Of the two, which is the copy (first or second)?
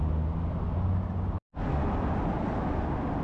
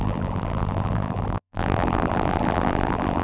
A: second